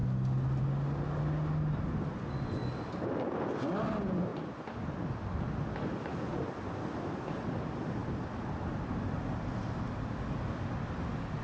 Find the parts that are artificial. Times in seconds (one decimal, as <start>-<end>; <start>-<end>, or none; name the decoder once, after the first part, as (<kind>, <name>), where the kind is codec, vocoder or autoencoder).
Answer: none